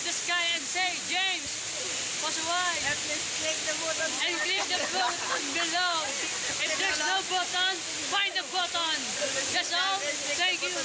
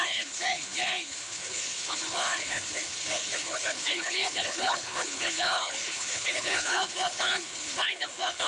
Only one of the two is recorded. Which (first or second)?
first